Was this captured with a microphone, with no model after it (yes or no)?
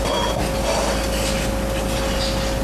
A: yes